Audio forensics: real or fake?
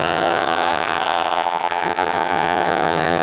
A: fake